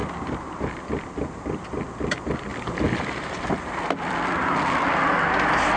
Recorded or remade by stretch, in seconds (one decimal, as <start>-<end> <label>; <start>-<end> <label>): 0.0-0.8 remade; 0.8-2.5 recorded; 2.5-3.9 remade; 3.9-5.8 recorded